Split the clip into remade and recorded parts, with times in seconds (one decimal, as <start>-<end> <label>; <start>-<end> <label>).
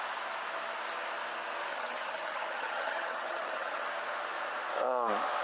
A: 0.0-1.7 recorded; 1.7-3.8 remade; 3.8-5.4 recorded